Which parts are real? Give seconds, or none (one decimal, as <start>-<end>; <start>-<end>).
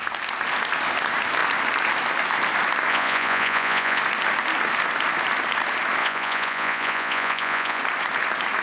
0.0-2.9; 4.0-6.0; 7.8-8.6